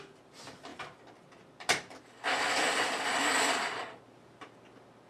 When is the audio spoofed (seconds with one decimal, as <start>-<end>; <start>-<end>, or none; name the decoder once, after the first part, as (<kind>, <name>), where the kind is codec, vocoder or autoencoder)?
none